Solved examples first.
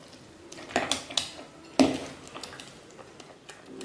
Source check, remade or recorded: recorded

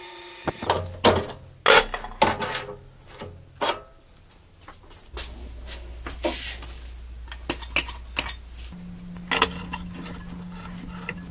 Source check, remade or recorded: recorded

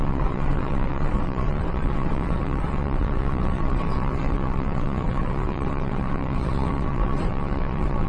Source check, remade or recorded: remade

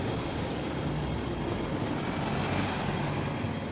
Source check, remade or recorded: recorded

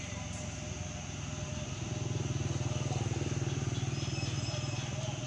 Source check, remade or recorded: recorded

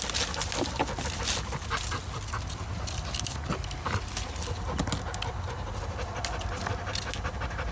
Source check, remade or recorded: recorded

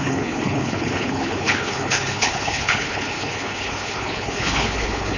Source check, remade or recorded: remade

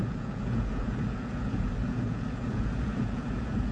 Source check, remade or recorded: remade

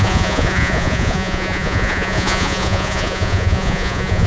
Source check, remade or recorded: remade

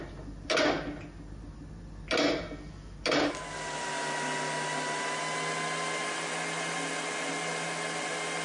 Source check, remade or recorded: recorded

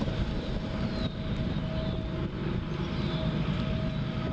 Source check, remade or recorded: recorded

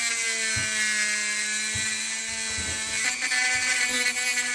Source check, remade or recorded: recorded